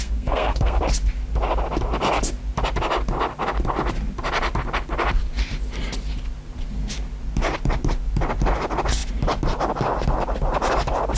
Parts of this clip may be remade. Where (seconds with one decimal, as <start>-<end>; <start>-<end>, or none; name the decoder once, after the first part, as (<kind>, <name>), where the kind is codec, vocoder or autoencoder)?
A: 0.0-0.8 (codec, SNAC)